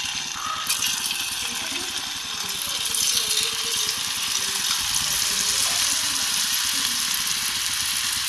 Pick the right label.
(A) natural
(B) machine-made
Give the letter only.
A